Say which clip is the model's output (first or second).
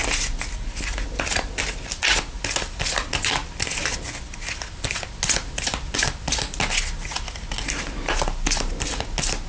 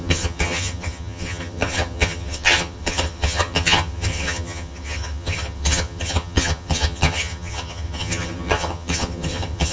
second